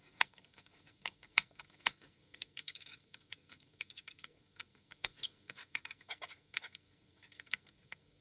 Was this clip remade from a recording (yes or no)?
yes